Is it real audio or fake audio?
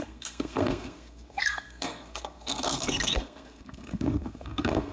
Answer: fake